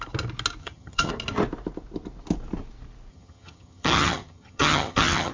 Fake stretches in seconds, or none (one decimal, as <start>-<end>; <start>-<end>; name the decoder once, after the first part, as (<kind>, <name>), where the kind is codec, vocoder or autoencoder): 0.6-1.1 (vocoder, HiFi-GAN); 3.1-5.3